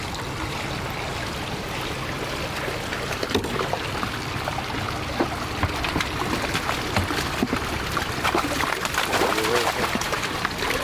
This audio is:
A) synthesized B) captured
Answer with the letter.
B